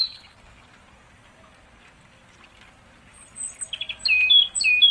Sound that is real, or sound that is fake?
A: real